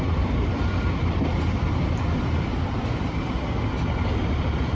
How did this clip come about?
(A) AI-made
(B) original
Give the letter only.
A